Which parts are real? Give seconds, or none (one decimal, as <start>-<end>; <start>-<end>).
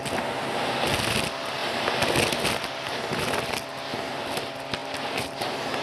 0.0-5.8